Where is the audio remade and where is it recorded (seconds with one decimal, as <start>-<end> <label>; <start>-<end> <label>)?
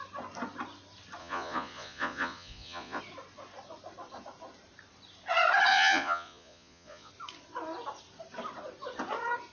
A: 0.0-1.2 recorded; 1.2-3.0 remade; 3.0-5.7 recorded; 5.7-7.1 remade; 7.1-9.5 recorded